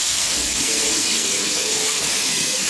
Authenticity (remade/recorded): remade